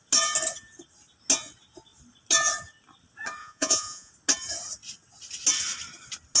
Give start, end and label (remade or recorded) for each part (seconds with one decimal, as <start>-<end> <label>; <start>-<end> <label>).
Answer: 0.0-3.4 recorded; 3.4-4.1 remade; 4.1-6.4 recorded